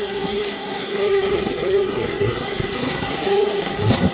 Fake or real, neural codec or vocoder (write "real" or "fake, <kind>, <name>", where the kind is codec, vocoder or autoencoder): fake, codec, SNAC